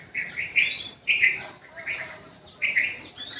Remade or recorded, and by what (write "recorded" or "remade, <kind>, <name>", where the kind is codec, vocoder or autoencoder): remade, vocoder, BigVGAN v2